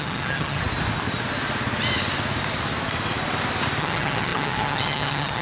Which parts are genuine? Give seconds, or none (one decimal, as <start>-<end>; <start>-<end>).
0.6-3.8